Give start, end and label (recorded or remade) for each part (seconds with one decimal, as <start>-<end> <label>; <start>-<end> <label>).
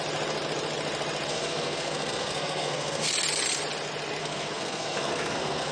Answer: 0.0-1.3 recorded; 1.3-3.1 remade; 3.1-4.2 recorded; 4.2-5.7 remade